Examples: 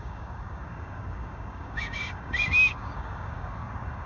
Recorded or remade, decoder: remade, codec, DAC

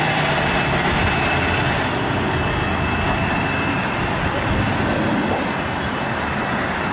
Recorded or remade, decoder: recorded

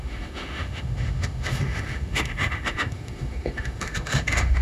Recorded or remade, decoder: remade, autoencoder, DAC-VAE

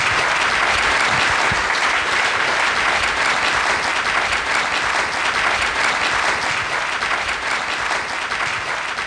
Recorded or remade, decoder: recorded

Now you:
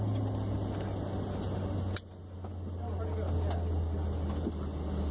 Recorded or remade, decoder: recorded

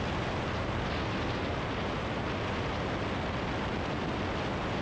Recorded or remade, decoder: recorded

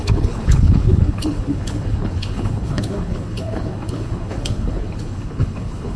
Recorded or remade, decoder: remade, codec, HILCodec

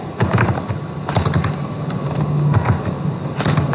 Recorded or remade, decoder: recorded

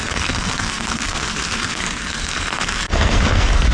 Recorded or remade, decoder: remade, codec, SNAC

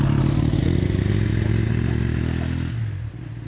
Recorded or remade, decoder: recorded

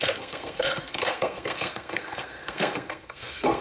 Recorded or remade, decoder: remade, codec, SNAC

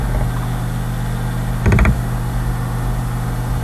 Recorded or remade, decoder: recorded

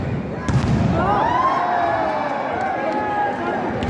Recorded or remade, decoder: recorded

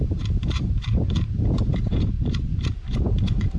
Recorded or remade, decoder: remade, vocoder, BigVGAN v2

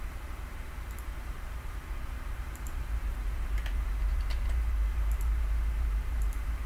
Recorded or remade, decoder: remade, vocoder, BigVGAN v2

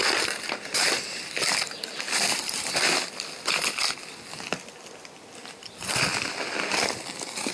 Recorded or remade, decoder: remade, vocoder, BigVGAN v2